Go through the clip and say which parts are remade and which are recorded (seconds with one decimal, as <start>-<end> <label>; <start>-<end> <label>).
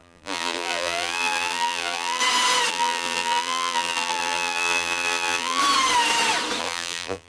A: 0.0-2.2 remade; 2.2-2.7 recorded; 2.7-5.6 remade; 5.6-6.6 recorded; 6.6-7.3 remade